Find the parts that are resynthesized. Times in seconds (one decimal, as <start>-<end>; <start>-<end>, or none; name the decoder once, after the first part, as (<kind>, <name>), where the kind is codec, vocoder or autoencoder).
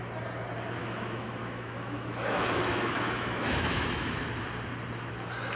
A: 0.8-4.2 (autoencoder, DAC-VAE)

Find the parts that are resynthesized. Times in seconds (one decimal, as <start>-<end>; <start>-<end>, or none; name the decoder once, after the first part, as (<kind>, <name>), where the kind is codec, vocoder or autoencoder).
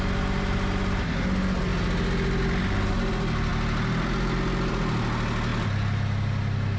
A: none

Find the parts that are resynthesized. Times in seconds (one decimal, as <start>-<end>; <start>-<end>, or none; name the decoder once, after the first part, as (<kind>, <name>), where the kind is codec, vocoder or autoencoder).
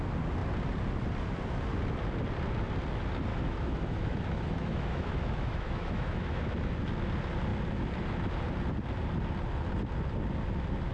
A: 3.3-6.7 (autoencoder, DAC-VAE)